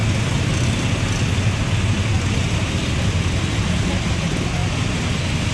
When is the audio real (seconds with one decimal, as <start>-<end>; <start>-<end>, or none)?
0.0-5.5